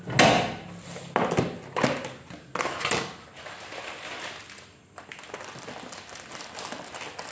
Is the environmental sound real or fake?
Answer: real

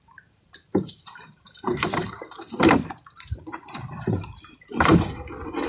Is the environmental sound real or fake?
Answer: fake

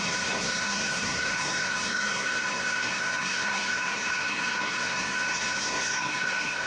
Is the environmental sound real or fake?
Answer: fake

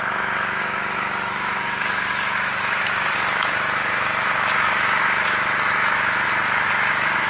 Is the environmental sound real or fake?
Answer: fake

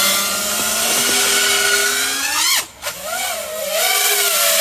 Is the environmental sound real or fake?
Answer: real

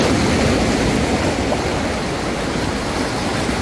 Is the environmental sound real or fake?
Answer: real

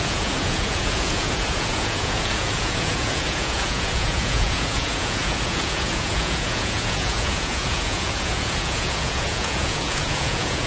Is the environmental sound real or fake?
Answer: fake